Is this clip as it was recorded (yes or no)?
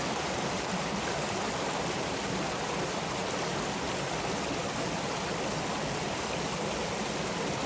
yes